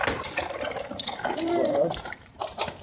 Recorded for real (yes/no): no